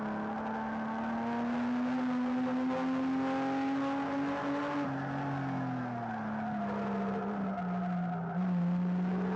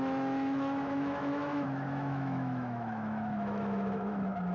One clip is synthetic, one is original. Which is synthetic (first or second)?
second